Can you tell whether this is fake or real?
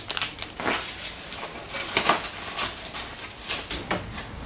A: real